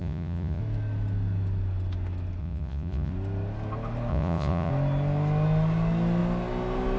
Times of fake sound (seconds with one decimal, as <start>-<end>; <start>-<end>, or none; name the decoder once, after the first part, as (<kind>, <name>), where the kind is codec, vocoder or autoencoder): 0.0-0.6 (vocoder, Vocos); 2.4-3.1; 4.1-4.7